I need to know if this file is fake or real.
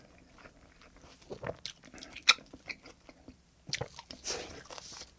real